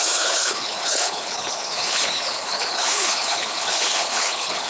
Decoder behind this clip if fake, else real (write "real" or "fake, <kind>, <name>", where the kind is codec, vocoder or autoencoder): fake, codec, HILCodec